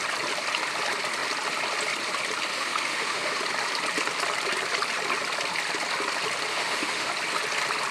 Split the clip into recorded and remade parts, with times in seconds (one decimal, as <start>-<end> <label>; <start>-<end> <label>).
0.0-2.5 recorded; 2.5-3.4 remade; 3.4-6.5 recorded; 6.5-7.1 remade; 7.1-7.9 recorded